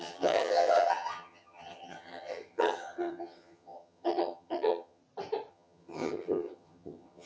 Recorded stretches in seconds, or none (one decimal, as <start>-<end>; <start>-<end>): 5.0-5.5